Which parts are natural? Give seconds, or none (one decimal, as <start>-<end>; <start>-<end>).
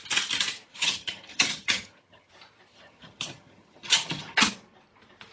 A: 0.0-0.7; 2.3-2.7; 4.5-5.3